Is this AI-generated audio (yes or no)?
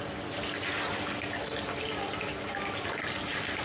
no